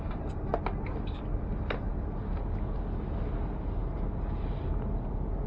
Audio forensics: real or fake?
real